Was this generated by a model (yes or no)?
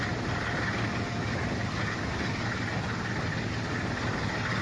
no